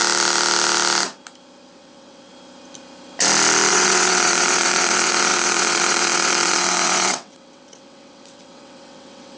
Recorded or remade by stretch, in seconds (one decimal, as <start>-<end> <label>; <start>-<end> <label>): 0.0-1.7 recorded; 1.7-2.3 remade; 2.3-3.7 recorded; 3.7-9.4 remade